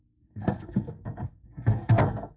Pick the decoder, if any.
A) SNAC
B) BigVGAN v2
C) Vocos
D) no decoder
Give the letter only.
A